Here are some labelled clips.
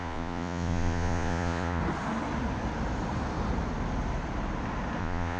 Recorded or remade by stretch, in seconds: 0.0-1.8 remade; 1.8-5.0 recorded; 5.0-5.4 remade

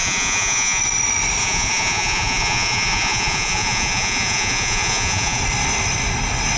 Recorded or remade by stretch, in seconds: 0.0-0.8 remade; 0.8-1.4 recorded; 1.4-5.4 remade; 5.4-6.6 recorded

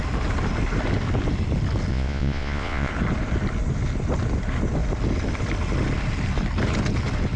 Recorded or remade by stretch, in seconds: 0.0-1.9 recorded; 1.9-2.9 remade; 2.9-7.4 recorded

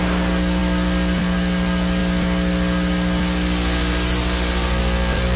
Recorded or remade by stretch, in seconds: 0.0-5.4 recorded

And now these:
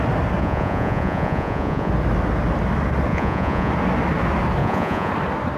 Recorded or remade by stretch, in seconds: 0.0-0.4 recorded; 0.4-1.9 remade; 1.9-3.1 recorded; 3.1-3.7 remade; 3.7-4.6 recorded; 4.6-5.1 remade; 5.1-5.6 recorded